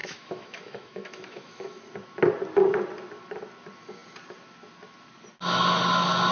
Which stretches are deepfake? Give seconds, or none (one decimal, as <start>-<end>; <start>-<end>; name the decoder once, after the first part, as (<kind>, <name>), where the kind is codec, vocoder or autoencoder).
0.0-1.8 (autoencoder, DAC-VAE)